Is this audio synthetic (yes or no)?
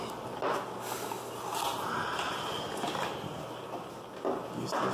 no